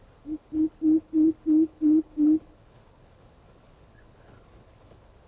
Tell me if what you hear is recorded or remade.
remade